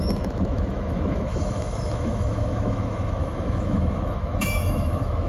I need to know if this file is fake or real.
fake